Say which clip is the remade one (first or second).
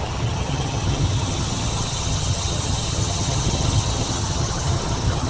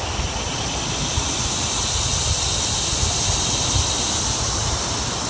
first